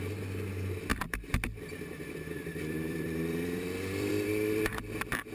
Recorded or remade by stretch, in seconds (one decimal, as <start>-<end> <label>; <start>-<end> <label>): 0.0-0.9 recorded; 0.9-4.1 remade; 4.1-5.3 recorded